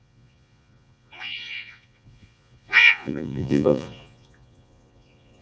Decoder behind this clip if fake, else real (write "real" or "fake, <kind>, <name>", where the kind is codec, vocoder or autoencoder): fake, vocoder, Vocos